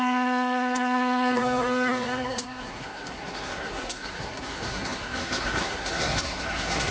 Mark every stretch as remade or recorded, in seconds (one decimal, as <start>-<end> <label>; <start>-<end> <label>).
0.0-6.9 remade